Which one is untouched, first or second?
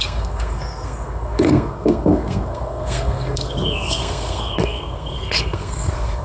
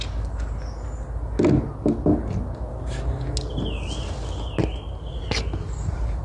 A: second